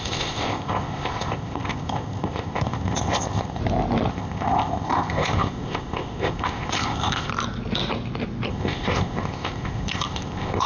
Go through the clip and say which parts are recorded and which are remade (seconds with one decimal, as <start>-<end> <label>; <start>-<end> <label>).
0.0-3.6 remade; 3.6-4.1 recorded; 4.1-7.3 remade; 7.3-8.5 recorded; 8.5-10.7 remade